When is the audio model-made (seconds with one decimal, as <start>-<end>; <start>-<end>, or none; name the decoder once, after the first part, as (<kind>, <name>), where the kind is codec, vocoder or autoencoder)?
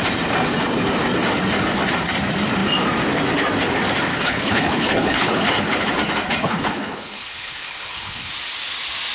4.1-5.9 (codec, HILCodec); 6.4-8.3